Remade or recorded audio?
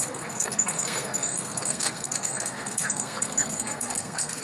remade